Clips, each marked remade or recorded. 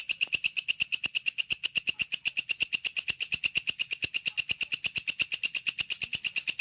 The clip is recorded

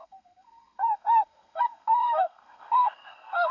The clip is remade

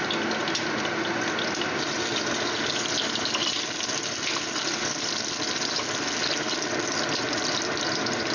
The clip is recorded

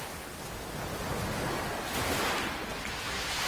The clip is recorded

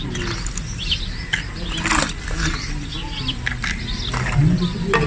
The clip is recorded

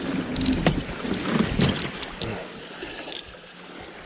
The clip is recorded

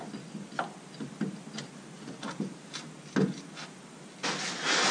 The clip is recorded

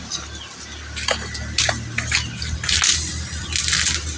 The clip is recorded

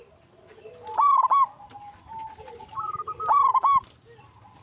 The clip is recorded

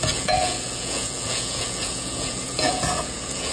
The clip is remade